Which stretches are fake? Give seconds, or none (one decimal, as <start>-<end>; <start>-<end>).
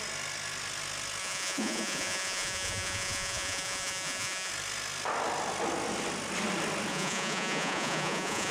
1.2-4.5; 6.9-8.5